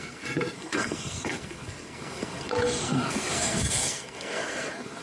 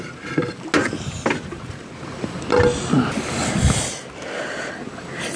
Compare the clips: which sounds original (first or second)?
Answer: second